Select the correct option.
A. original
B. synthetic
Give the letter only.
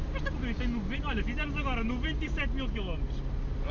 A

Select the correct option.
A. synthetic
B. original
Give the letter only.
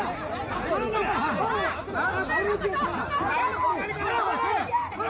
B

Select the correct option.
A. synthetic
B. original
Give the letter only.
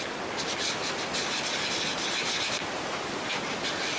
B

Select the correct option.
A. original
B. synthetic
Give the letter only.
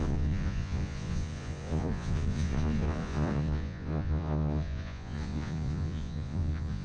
B